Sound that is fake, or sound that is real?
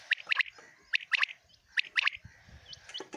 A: real